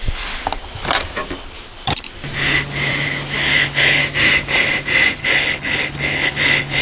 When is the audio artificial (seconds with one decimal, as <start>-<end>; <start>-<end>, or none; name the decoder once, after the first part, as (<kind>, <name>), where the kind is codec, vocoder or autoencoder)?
3.4-4.0 (codec, HILCodec); 5.2-6.8

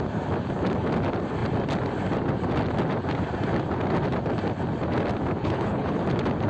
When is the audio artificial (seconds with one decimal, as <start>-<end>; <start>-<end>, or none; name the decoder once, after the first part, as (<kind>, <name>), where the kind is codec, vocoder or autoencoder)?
5.4-6.0 (codec, HILCodec)

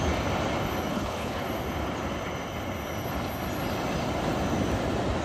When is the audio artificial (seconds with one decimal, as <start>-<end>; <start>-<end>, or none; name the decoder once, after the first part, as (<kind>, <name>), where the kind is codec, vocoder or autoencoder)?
0.9-1.4 (codec, HILCodec)

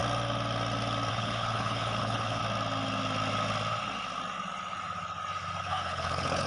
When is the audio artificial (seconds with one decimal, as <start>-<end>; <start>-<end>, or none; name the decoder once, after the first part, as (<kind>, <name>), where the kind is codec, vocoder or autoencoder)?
1.1-2.4 (codec, HILCodec); 5.6-6.5

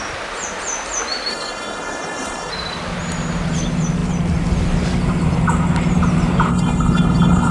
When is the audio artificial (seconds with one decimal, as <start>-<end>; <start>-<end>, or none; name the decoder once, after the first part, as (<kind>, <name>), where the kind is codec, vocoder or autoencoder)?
1.3-2.5 (codec, HILCodec); 6.5-7.5